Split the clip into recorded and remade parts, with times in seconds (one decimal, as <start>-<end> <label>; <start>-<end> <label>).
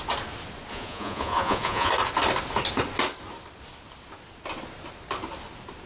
0.0-0.7 recorded; 0.7-1.9 remade; 1.9-5.9 recorded